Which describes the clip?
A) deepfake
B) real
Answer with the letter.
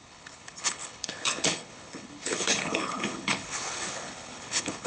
A